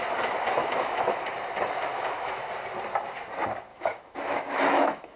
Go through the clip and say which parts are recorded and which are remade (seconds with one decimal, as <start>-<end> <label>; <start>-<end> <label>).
0.0-0.6 recorded; 0.6-1.3 remade; 1.3-1.8 recorded; 1.8-2.5 remade; 2.5-3.7 recorded; 3.7-5.2 remade